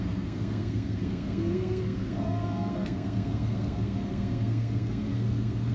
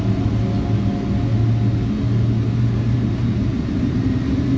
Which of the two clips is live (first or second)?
second